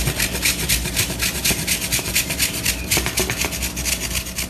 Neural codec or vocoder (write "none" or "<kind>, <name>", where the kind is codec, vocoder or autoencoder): none